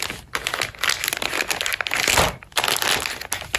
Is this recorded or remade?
recorded